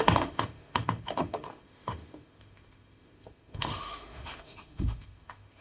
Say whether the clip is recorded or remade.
remade